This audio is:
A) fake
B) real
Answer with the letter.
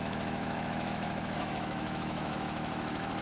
A